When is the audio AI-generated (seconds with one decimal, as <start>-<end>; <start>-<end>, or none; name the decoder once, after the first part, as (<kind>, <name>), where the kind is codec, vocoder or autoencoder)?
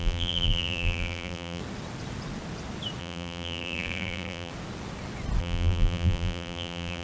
0.0-1.6 (vocoder, BigVGAN v2); 3.0-4.5; 5.4-7.0